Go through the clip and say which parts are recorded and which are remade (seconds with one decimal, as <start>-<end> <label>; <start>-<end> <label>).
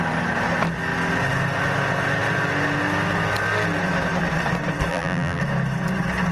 0.0-4.9 recorded; 4.9-5.4 remade; 5.4-6.3 recorded